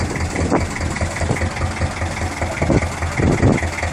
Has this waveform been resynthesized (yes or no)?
no